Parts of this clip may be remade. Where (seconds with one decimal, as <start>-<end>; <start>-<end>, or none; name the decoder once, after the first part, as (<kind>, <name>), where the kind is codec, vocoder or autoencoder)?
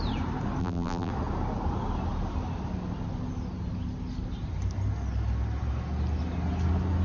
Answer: 0.6-1.1 (vocoder, BigVGAN v2)